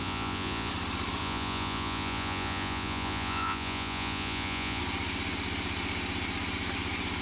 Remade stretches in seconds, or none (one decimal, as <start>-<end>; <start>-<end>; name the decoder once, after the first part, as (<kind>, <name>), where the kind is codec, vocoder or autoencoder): 0.0-0.7 (vocoder, Vocos); 1.2-4.8